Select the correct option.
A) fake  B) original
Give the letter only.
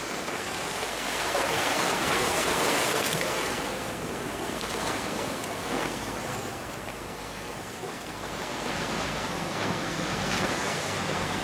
A